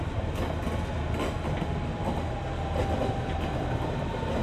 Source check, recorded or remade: recorded